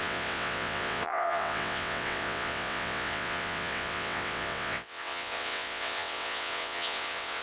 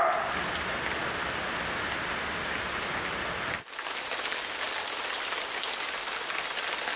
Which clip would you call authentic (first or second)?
second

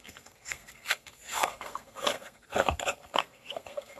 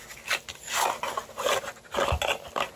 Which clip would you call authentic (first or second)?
second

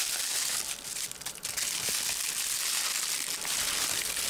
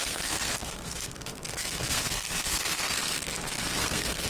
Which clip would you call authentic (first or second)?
first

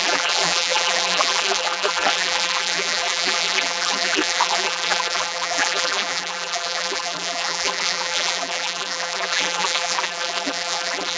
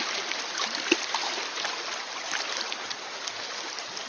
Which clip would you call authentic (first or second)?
second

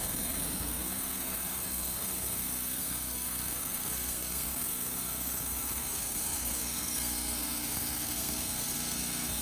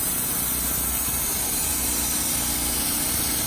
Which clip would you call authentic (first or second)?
second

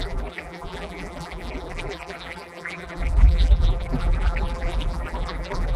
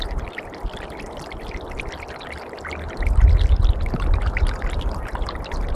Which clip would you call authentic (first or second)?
second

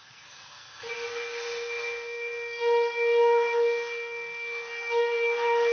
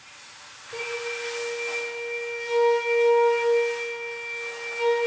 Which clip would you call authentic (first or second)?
second